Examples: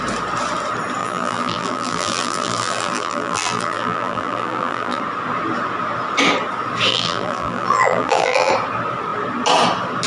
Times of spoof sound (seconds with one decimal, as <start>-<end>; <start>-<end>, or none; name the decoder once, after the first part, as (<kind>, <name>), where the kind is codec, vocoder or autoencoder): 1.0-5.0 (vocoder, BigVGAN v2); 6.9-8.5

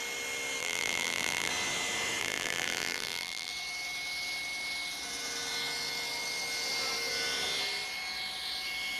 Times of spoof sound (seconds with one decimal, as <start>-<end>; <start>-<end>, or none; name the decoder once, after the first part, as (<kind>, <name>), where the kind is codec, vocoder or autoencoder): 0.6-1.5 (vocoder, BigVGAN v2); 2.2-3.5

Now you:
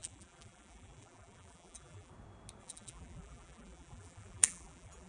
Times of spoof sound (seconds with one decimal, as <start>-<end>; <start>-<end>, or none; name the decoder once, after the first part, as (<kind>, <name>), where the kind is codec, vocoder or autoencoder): 0.0-2.1 (vocoder, BigVGAN v2); 2.6-5.1

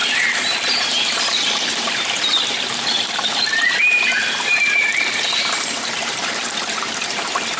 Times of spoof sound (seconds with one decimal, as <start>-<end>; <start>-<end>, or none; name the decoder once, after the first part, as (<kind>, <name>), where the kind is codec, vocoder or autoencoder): 0.0-7.6 (vocoder, BigVGAN v2)

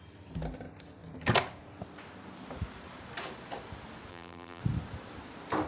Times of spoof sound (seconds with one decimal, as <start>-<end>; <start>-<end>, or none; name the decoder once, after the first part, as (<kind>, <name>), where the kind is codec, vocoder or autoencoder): 4.1-4.6 (vocoder, BigVGAN v2)